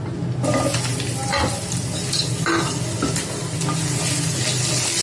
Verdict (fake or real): real